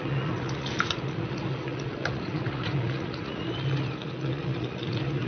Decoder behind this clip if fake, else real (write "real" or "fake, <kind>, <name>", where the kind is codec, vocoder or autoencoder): fake, vocoder, Vocos